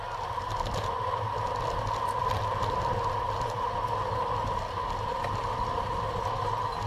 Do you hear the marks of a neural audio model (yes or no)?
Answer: no